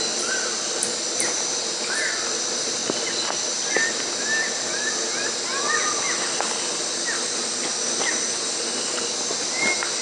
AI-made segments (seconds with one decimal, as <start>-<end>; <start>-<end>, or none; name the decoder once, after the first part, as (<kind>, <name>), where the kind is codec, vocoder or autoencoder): none